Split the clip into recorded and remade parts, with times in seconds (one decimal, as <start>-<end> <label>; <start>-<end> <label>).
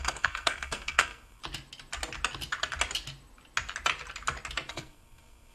0.0-1.4 remade; 1.4-4.7 recorded; 4.7-5.5 remade